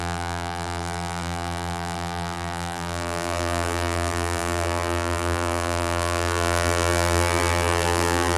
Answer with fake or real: fake